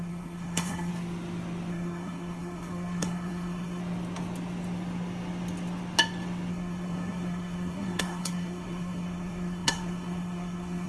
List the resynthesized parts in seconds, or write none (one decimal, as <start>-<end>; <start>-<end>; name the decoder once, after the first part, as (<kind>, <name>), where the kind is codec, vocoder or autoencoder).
0.0-0.9 (codec, SNAC); 1.7-3.8; 6.5-10.9